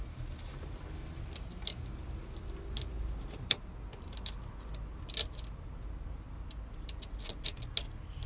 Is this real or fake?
real